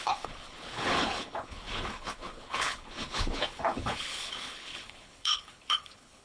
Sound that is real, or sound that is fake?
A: fake